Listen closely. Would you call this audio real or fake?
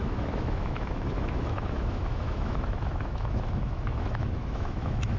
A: fake